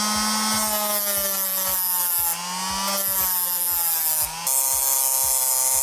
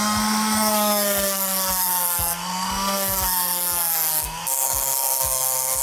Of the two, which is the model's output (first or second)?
second